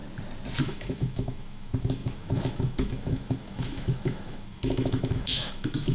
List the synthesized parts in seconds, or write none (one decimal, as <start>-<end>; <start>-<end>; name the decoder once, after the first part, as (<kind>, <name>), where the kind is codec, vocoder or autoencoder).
0.6-5.9 (autoencoder, DAC-VAE)